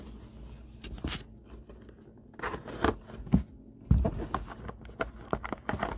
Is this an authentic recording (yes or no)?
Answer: yes